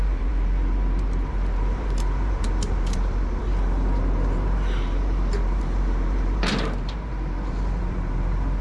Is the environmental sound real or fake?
fake